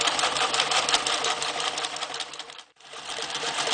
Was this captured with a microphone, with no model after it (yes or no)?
no